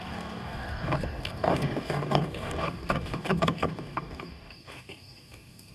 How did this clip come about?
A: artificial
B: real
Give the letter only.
A